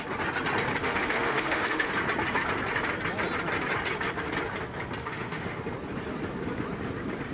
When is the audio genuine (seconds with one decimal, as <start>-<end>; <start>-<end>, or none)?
0.0-0.8; 1.9-5.0; 5.6-7.3